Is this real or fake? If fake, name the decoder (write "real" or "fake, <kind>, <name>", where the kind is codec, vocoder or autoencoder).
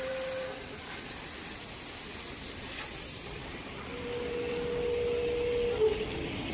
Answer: real